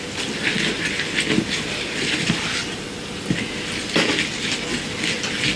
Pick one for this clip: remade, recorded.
recorded